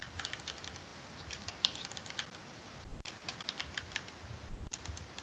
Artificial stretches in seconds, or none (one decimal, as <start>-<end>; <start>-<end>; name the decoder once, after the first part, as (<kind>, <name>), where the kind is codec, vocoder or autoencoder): 0.0-5.2 (vocoder, BigVGAN v2)